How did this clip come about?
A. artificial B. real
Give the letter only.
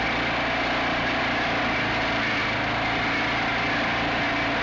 B